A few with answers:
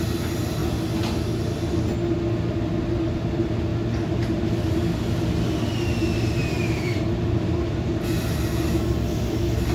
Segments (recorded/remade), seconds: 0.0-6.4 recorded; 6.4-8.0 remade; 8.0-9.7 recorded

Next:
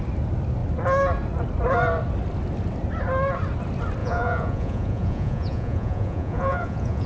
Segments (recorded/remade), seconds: 0.0-4.0 recorded; 4.0-7.1 remade

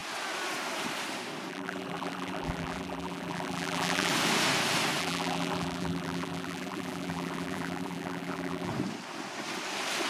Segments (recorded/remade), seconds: 0.0-1.5 recorded; 1.5-4.1 remade; 4.1-5.0 recorded; 5.0-8.7 remade; 8.7-10.1 recorded